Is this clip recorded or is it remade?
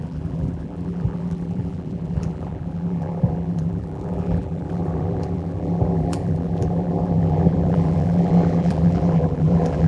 remade